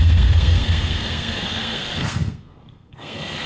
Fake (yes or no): yes